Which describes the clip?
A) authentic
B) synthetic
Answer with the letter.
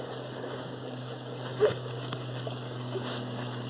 B